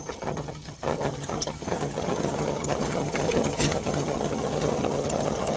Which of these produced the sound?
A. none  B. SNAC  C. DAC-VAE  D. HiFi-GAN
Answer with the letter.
D